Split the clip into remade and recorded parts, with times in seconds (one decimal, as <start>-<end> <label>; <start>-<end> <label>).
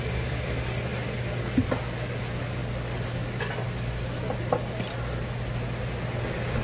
0.0-6.6 recorded